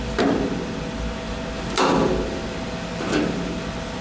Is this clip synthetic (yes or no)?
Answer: no